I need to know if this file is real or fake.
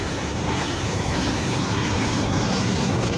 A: fake